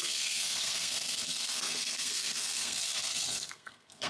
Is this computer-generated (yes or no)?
yes